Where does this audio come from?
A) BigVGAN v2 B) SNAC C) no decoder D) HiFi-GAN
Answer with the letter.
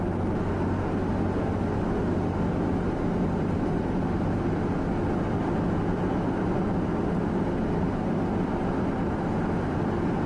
C